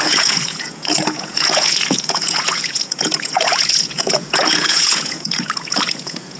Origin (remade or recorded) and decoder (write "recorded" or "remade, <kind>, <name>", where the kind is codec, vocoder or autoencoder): remade, vocoder, Vocos